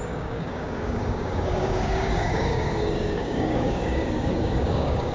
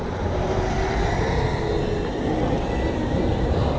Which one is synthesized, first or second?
first